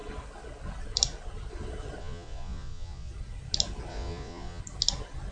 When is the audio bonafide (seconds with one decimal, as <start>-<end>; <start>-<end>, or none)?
0.0-2.0; 3.1-3.9; 4.6-5.3

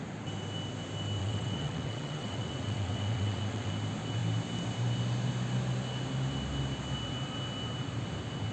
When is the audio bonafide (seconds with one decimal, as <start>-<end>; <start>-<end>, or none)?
0.0-1.2; 3.7-8.5